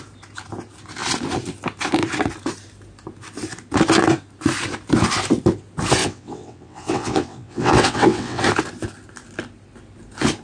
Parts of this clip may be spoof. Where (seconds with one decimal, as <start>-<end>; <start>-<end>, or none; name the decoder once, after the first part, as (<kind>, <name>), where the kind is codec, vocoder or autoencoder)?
6.0-8.4 (vocoder, WaveNeXt)